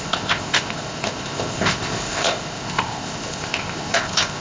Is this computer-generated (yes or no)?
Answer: yes